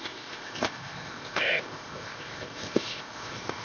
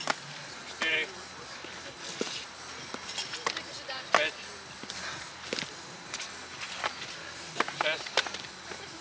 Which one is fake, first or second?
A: first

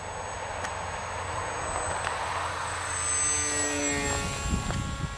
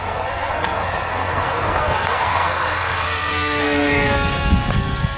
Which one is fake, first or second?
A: second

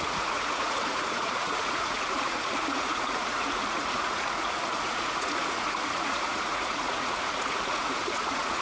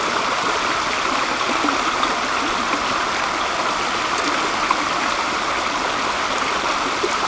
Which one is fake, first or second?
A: first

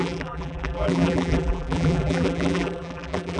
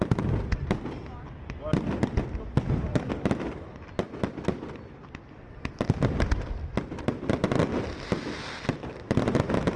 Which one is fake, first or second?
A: first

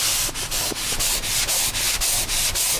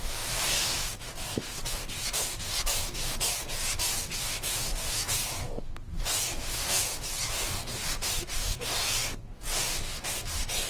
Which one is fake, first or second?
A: second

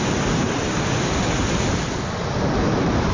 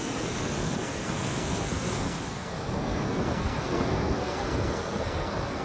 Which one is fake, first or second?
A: second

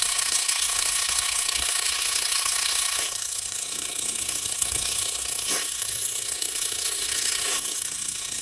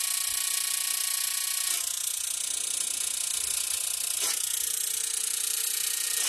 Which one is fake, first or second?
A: first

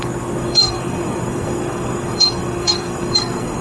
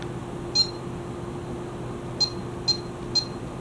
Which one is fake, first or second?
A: first